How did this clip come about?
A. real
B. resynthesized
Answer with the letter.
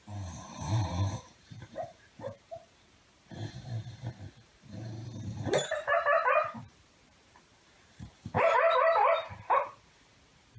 B